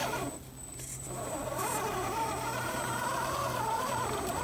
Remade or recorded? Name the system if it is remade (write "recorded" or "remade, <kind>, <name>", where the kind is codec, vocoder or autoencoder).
recorded